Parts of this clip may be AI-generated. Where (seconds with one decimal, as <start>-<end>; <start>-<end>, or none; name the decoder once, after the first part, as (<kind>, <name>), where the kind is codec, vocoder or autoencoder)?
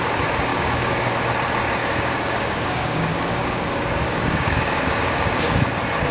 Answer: 0.5-1.2 (codec, DAC); 1.8-5.5